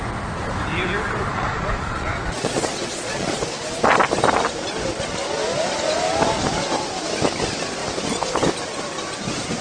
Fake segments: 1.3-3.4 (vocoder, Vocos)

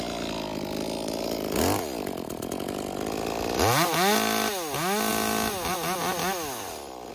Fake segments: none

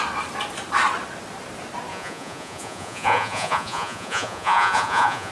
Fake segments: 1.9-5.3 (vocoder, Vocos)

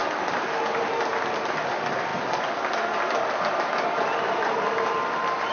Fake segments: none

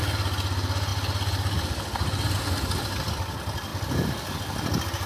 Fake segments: none

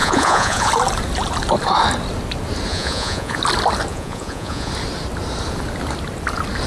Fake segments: 0.0-0.7 (vocoder, Vocos); 2.7-3.4; 3.9-4.7

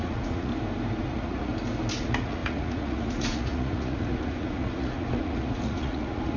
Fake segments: 0.0-0.5 (vocoder, Vocos); 1.0-1.5; 2.0-6.4

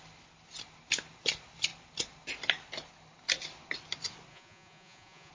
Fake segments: 4.3-5.3 (vocoder, Vocos)